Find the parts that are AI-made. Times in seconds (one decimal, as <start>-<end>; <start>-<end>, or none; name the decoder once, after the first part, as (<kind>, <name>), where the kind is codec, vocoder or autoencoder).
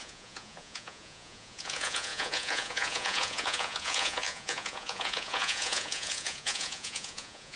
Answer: 0.0-7.6 (vocoder, Vocos)